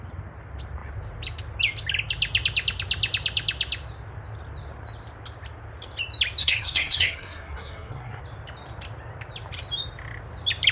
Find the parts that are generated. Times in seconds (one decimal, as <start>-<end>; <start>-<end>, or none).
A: 6.4-8.2